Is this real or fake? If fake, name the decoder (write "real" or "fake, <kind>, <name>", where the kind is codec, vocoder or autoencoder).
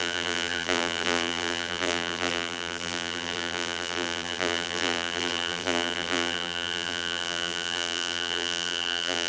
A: fake, vocoder, BigVGAN v2